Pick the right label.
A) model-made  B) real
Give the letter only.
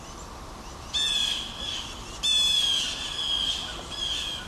B